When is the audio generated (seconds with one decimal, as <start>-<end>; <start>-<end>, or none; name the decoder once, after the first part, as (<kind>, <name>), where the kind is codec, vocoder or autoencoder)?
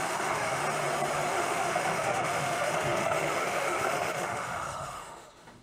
0.0-0.6 (autoencoder, DAC-VAE); 1.3-5.6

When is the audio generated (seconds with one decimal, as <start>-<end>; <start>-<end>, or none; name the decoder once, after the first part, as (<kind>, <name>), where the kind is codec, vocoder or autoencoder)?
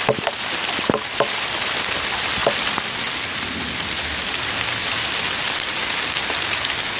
none